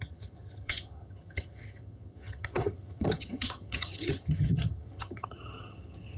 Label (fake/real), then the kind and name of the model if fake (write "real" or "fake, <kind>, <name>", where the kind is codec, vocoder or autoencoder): fake, vocoder, HiFi-GAN